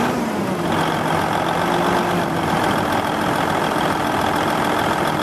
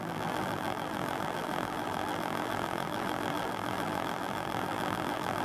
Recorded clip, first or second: first